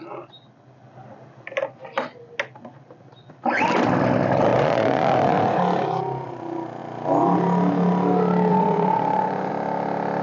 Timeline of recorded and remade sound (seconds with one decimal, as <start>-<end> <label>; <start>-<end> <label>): 0.0-4.5 recorded; 4.5-5.6 remade; 5.6-8.5 recorded; 8.5-9.5 remade; 9.5-10.2 recorded